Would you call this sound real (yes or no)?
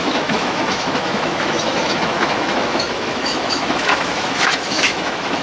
no